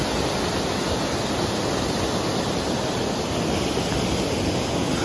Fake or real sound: real